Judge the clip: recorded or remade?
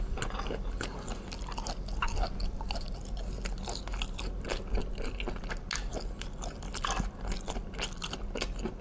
recorded